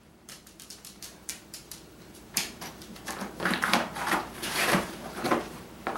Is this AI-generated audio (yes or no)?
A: yes